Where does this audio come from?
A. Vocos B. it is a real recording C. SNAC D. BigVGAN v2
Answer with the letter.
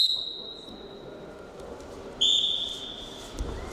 D